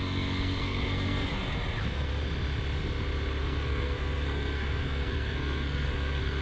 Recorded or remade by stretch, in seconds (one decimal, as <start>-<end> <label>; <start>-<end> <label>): 0.0-1.3 remade; 1.3-1.8 recorded; 1.8-2.2 remade; 2.2-3.4 recorded; 3.4-6.4 remade